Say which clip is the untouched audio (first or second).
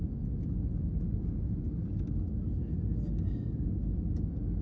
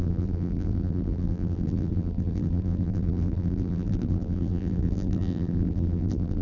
first